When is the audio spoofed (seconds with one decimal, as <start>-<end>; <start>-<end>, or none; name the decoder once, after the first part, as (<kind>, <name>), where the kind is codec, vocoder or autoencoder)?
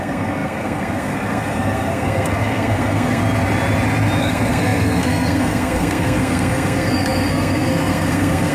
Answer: 0.0-3.2 (codec, SNAC); 4.2-8.5